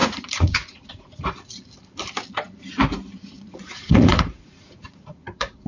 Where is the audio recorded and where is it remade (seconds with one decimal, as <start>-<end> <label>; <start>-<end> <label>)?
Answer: 0.0-1.2 remade; 1.2-3.2 recorded; 3.2-5.7 remade